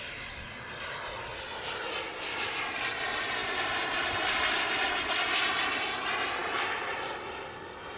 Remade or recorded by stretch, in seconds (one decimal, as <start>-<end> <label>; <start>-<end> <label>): 0.0-3.4 recorded; 3.4-4.9 remade; 4.9-8.0 recorded